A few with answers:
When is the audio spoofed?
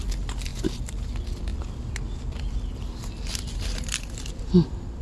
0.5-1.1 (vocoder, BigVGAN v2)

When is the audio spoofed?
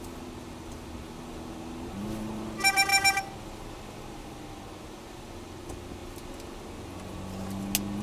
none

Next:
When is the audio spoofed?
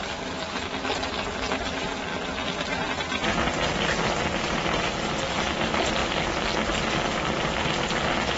none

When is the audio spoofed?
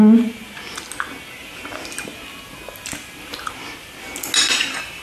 none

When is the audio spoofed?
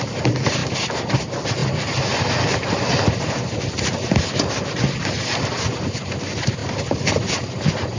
none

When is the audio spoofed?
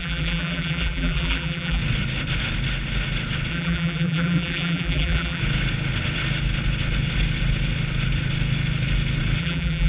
0.0-1.8 (vocoder, BigVGAN v2); 3.5-5.4; 9.4-9.9